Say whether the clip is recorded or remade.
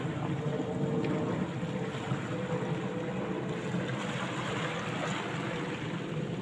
recorded